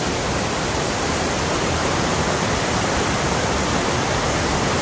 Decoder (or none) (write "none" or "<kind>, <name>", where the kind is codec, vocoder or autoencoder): none